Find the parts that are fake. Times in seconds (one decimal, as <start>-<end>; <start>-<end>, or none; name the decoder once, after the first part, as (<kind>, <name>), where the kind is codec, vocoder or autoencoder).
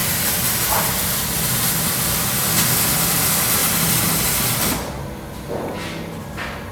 none